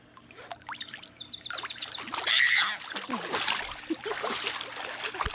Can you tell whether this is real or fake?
real